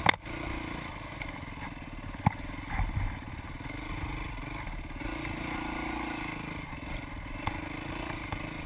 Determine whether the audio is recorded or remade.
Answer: recorded